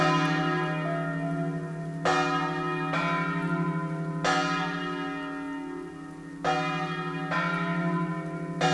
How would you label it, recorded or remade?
recorded